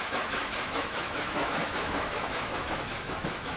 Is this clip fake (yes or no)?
yes